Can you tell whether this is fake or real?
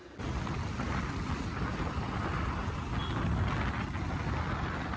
real